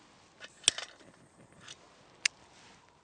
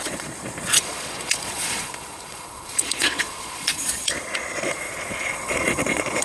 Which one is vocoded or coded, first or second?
second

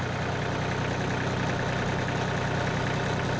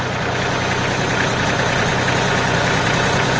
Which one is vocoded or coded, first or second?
second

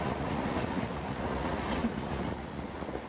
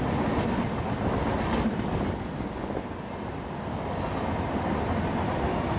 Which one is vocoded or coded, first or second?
first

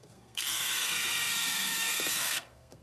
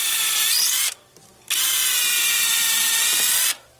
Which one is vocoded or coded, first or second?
first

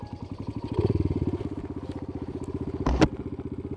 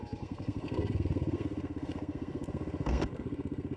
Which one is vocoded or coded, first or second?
second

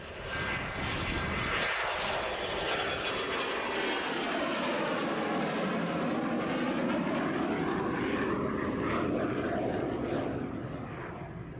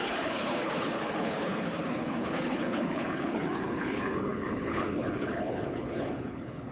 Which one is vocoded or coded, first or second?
second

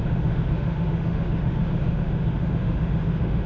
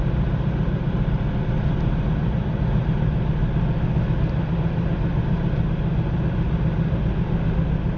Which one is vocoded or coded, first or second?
first